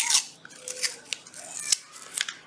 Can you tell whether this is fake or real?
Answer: real